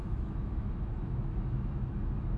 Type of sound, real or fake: fake